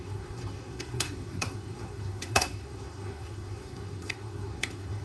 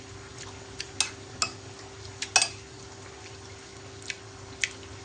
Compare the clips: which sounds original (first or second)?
second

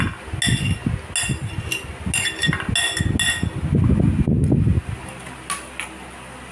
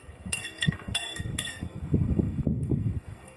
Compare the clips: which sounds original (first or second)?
first